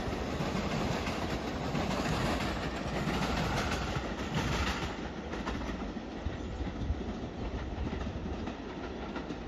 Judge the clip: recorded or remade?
recorded